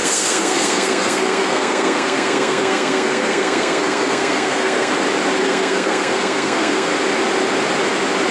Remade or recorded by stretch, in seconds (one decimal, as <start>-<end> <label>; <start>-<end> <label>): 0.0-4.9 remade; 4.9-5.4 recorded; 5.4-6.9 remade; 6.9-8.3 recorded